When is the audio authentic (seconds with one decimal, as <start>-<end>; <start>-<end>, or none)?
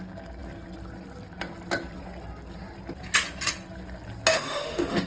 0.0-4.3